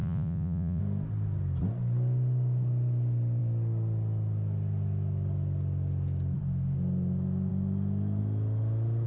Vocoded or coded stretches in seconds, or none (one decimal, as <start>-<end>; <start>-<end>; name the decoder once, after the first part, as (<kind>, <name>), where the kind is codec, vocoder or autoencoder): 0.0-0.8 (vocoder, Vocos)